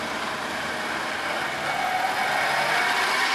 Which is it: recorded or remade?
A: recorded